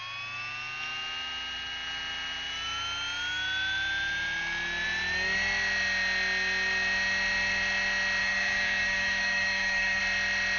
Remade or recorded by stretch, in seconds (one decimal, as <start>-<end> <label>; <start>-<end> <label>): 0.0-8.2 recorded; 8.2-10.0 remade; 10.0-10.6 recorded